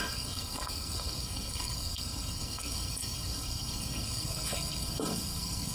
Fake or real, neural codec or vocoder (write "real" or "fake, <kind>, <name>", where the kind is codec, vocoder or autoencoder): fake, codec, SNAC